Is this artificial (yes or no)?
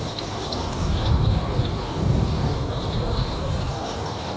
yes